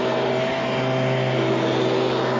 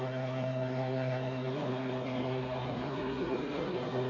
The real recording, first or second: first